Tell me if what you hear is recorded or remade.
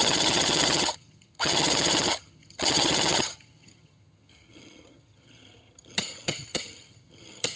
remade